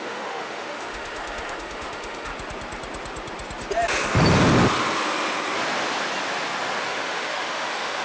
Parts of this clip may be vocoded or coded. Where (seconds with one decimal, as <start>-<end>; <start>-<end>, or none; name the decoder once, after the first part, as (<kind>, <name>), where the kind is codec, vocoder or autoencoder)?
0.0-2.3 (autoencoder, DAC-VAE); 6.8-8.0